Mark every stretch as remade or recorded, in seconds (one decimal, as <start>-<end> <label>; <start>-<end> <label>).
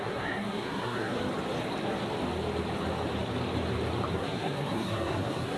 0.0-1.2 remade; 1.2-4.1 recorded; 4.1-5.6 remade